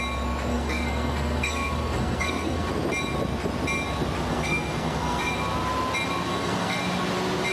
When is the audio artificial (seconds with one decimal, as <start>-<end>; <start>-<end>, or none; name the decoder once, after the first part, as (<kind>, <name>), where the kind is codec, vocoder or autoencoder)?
0.5-2.7 (codec, SNAC); 4.3-5.3; 6.3-6.8